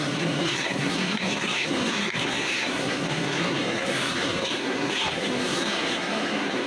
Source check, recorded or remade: remade